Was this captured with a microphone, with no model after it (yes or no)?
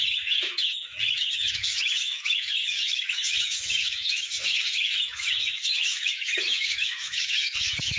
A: no